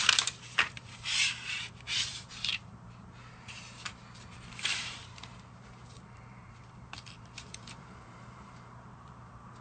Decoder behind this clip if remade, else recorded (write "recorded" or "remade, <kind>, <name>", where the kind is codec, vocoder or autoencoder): remade, vocoder, BigVGAN v2